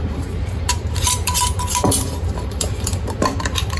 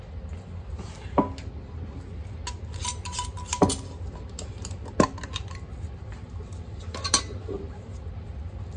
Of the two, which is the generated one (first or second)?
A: first